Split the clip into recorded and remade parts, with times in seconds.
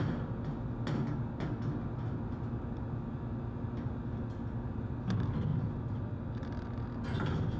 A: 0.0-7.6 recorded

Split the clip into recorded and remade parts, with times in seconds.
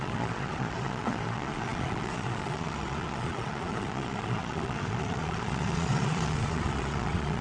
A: 0.0-7.4 remade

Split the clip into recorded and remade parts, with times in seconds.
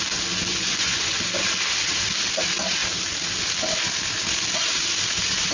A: 0.0-0.5 recorded; 0.5-1.2 remade; 1.2-5.5 recorded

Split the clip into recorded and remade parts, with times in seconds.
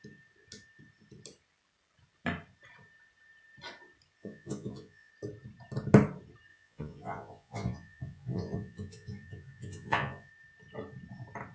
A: 0.0-4.2 recorded; 4.2-5.1 remade; 5.1-6.5 recorded; 6.5-10.3 remade; 10.3-11.5 recorded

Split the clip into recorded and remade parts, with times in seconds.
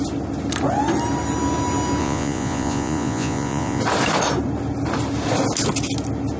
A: 0.0-2.0 recorded; 2.0-3.8 remade; 3.8-6.4 recorded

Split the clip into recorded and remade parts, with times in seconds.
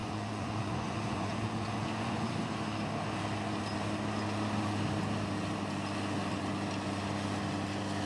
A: 0.0-2.3 remade; 2.3-8.1 recorded